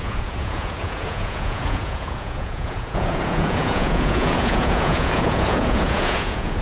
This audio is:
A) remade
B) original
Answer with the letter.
A